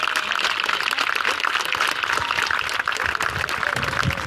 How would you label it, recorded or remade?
recorded